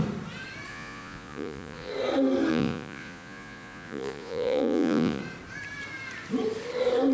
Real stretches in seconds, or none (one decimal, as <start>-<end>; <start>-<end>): 0.0-0.7; 1.9-2.5; 5.2-7.1